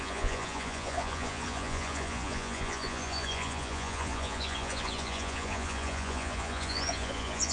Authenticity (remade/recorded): remade